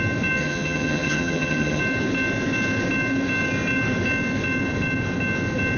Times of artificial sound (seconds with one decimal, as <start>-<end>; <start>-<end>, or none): 0.4-1.8